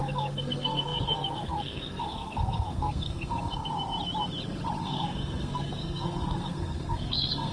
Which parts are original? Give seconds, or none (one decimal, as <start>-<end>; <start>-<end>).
3.7-4.8